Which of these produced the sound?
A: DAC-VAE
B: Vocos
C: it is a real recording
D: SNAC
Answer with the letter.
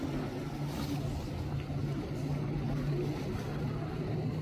C